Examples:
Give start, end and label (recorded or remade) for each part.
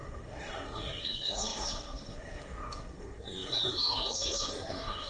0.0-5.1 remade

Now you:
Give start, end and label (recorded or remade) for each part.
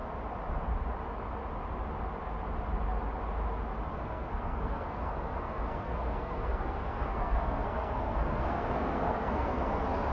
0.0-3.9 recorded; 3.9-10.1 remade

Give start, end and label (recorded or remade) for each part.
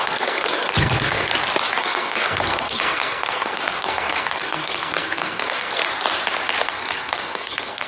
0.0-1.3 remade; 1.3-1.8 recorded; 1.8-5.8 remade; 5.8-6.6 recorded; 6.6-7.9 remade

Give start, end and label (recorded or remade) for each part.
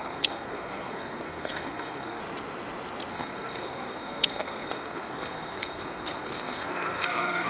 0.0-2.2 remade; 2.2-3.1 recorded; 3.1-7.5 remade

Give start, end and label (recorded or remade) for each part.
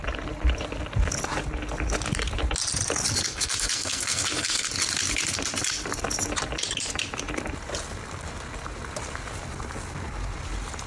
0.0-3.3 recorded; 3.3-4.7 remade; 4.7-10.9 recorded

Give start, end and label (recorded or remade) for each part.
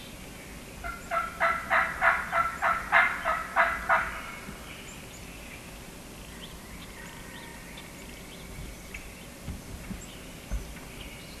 0.0-11.4 recorded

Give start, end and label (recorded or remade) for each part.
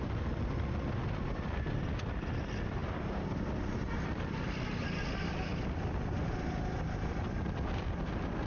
0.0-8.5 recorded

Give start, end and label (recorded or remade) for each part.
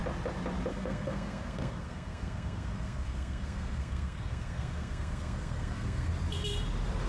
0.0-0.7 recorded; 0.7-6.1 remade; 6.1-7.1 recorded